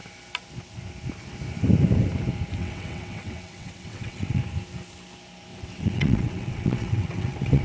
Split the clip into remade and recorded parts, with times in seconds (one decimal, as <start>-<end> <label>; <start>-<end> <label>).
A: 0.0-2.6 recorded; 2.6-4.4 remade; 4.4-5.5 recorded; 5.5-7.6 remade

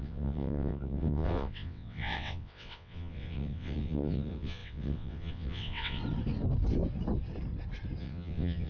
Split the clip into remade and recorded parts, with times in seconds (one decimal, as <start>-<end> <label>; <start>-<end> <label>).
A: 0.0-6.0 remade; 6.0-8.0 recorded; 8.0-8.7 remade